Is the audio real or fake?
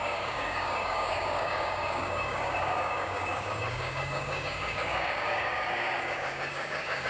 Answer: fake